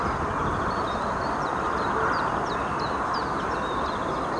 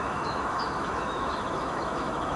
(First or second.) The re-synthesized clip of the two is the second